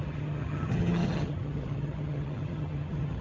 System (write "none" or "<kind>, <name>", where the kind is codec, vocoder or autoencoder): vocoder, HiFi-GAN